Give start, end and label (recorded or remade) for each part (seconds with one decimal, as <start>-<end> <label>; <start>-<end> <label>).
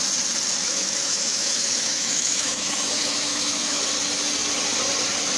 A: 0.0-0.6 recorded; 0.6-3.8 remade; 3.8-5.4 recorded